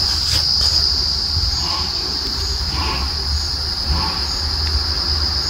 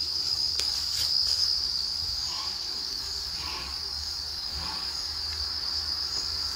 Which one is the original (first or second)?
first